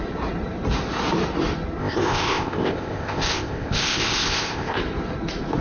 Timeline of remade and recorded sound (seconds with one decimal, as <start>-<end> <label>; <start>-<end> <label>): 0.0-1.8 recorded; 1.8-4.8 remade; 4.8-5.6 recorded